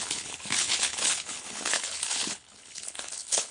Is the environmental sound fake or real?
fake